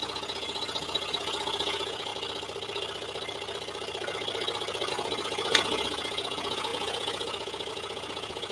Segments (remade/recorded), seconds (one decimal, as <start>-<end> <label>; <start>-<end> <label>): 0.0-2.1 remade; 2.1-4.9 recorded; 4.9-8.5 remade